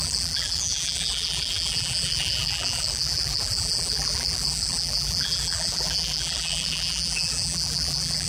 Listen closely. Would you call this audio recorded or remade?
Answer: remade